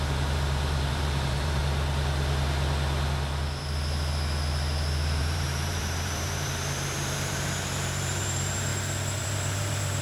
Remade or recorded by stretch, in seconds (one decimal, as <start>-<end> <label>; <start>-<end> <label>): 0.0-1.6 remade; 1.6-5.2 recorded; 5.2-8.7 remade; 8.7-9.2 recorded; 9.2-10.0 remade